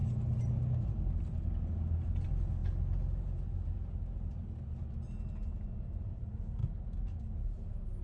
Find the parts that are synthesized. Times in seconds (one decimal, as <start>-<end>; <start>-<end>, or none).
none